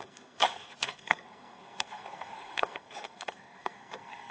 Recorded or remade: remade